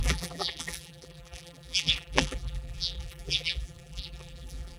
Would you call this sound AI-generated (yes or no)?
yes